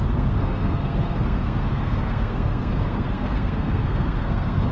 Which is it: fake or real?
fake